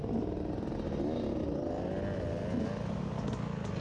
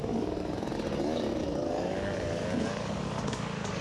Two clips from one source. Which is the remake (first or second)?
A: second